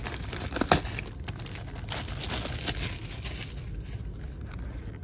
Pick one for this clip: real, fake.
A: real